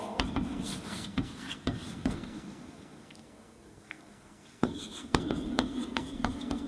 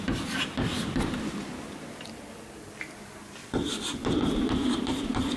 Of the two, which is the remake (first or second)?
first